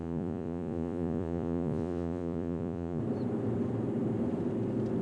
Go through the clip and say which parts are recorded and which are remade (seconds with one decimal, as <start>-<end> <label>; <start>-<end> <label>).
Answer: 0.0-3.0 remade; 3.0-5.0 recorded